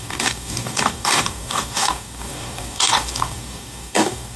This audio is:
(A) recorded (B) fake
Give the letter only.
B